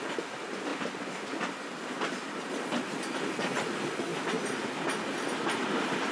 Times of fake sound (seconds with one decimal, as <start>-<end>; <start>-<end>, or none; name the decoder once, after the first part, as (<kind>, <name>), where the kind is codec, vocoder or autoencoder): none